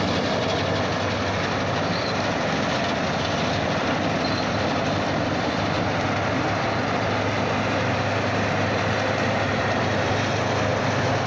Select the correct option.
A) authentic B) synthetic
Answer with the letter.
A